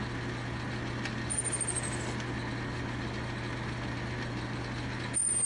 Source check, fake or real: real